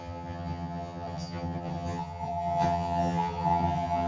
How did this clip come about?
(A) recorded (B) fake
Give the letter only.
B